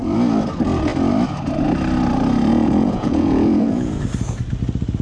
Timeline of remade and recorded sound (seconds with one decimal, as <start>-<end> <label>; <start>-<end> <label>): 0.0-2.5 recorded; 2.5-3.9 remade; 3.9-5.0 recorded